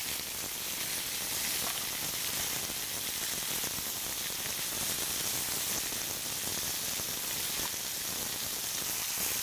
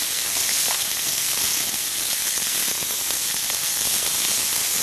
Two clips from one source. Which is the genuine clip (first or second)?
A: first